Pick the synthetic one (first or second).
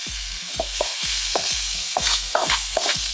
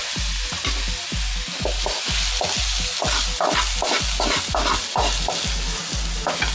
first